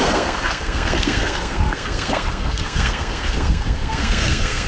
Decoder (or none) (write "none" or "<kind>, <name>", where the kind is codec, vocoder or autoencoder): codec, SNAC